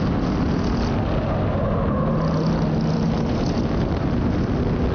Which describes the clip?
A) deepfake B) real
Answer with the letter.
B